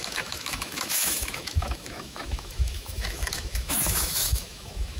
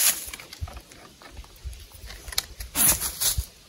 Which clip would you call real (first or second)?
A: second